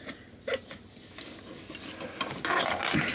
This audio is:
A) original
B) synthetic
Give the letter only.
A